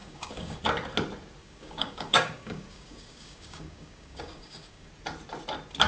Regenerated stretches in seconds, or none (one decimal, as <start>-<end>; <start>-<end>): 0.0-0.6; 1.4-4.9